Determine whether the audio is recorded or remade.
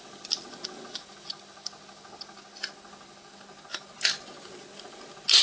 recorded